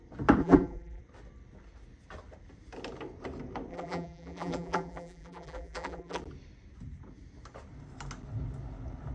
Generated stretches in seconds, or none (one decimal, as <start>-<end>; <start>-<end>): 0.4-1.0; 3.7-6.2